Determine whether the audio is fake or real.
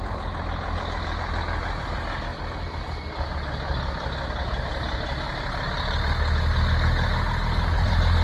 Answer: real